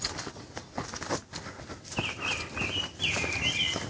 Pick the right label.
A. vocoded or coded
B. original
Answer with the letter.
B